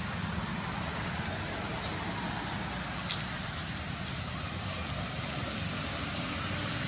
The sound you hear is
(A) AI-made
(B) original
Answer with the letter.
B